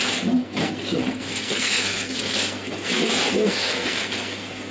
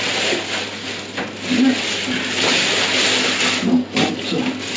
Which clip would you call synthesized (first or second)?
first